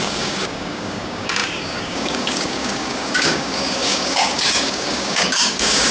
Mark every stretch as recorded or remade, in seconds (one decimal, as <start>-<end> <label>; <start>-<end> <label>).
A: 0.0-5.9 remade